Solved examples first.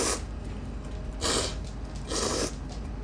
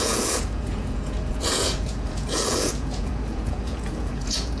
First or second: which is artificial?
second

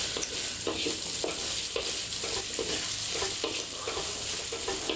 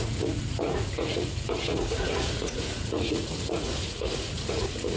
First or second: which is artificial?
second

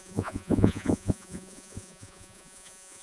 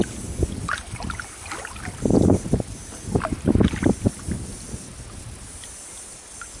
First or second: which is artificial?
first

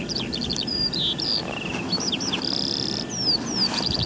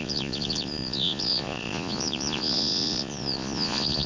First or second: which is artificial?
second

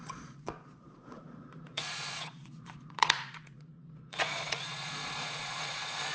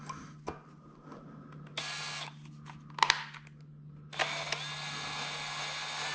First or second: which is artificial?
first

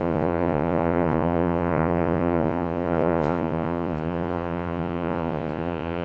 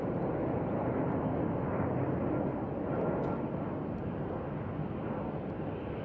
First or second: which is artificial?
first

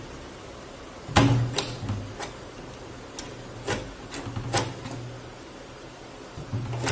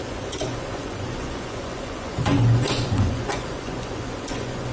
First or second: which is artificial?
second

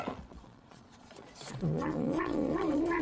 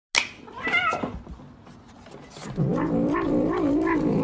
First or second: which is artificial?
first